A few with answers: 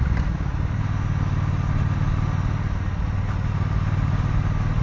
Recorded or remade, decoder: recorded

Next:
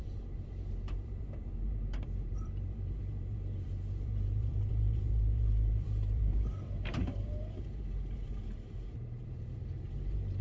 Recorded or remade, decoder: remade, vocoder, BigVGAN v2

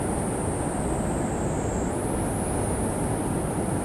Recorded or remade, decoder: recorded